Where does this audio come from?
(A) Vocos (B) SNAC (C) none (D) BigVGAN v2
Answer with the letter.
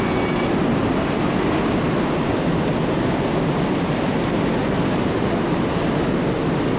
C